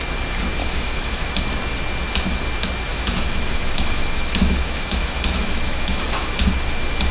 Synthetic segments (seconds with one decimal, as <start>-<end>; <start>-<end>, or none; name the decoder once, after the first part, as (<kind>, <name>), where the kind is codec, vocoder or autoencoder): 0.6-1.3 (autoencoder, DAC-VAE); 2.9-6.5